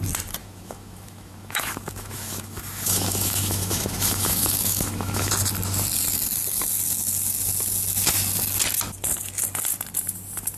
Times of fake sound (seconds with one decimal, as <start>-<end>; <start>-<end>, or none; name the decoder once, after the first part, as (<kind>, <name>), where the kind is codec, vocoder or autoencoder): 0.4-5.3 (autoencoder, DAC-VAE)